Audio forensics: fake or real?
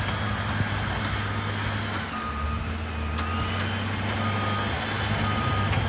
real